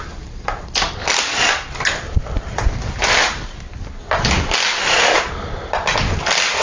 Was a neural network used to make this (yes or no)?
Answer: no